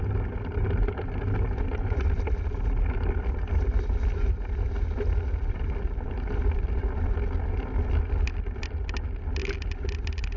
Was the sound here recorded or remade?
recorded